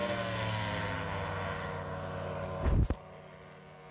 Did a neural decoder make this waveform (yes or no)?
no